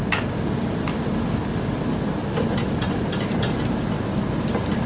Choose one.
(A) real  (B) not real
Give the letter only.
A